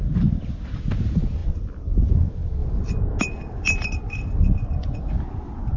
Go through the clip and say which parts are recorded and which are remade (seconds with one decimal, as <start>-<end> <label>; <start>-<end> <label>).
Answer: 0.0-1.4 recorded; 1.4-2.1 remade; 2.1-5.8 recorded